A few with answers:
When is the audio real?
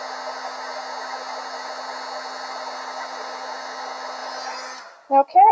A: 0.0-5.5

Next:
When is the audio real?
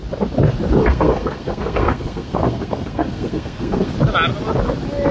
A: 0.0-0.8; 3.9-5.1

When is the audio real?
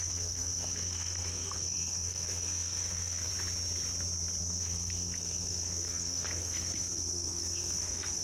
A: 3.3-4.4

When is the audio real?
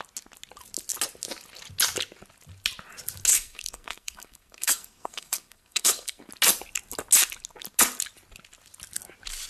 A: 0.0-3.3; 6.3-9.5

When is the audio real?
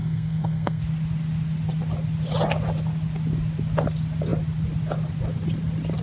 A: 0.8-6.0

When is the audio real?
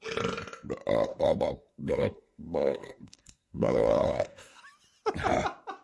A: 0.0-1.1; 4.6-5.8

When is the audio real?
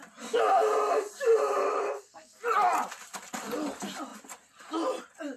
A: 0.0-1.8; 2.4-5.4